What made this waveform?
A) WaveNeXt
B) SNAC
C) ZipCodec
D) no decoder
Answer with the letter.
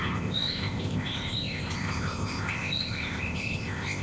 C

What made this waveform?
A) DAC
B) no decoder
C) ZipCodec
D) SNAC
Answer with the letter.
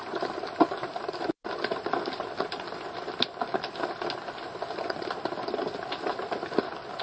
B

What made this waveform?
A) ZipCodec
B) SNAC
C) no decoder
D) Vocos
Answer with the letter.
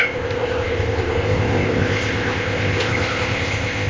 A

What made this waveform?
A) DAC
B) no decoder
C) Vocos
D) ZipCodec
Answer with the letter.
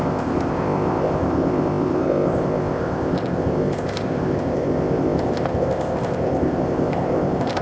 D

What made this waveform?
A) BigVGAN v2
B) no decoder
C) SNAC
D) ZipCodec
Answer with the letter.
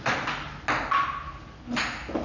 B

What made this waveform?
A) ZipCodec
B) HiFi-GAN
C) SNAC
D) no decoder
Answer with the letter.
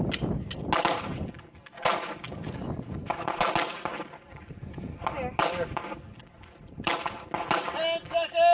D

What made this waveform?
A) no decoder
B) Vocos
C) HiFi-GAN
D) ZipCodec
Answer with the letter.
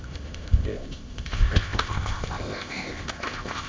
D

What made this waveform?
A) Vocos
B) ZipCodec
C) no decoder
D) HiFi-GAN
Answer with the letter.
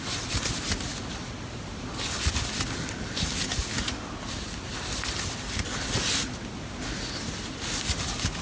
C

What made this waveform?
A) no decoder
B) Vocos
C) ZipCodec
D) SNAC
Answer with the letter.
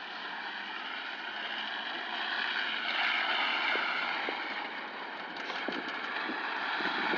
A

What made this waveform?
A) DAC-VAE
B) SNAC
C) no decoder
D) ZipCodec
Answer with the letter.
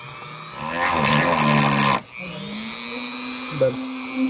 C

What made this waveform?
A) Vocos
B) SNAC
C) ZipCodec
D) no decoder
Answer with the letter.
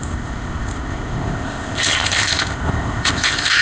C